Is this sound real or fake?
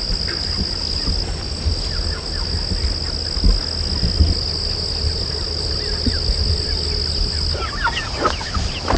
real